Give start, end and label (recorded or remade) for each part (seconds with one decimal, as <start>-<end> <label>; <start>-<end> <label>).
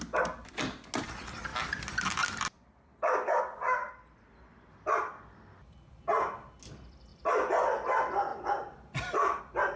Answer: 0.0-1.5 recorded; 1.5-3.4 remade; 3.4-8.3 recorded; 8.3-9.4 remade; 9.4-9.8 recorded